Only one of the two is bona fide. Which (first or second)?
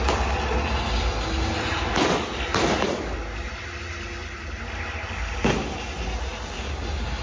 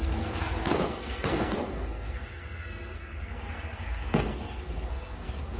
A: first